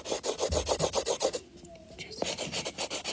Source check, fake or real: real